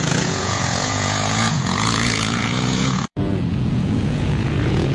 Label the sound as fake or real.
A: fake